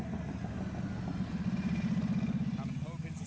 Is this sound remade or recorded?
recorded